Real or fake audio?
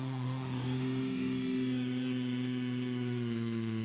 fake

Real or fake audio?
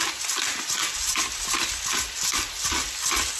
real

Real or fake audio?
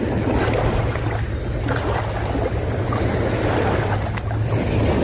real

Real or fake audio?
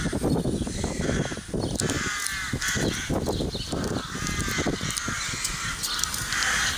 real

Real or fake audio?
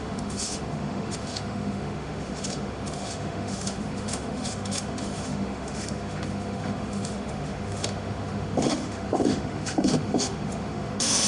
fake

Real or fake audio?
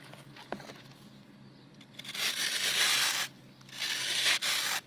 real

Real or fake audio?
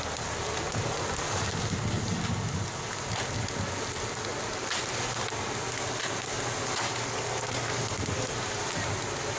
real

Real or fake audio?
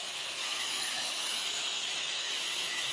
fake